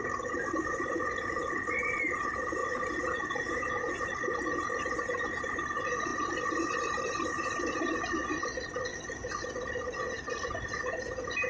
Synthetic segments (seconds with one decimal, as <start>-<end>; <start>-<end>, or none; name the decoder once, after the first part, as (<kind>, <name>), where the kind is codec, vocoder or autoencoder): none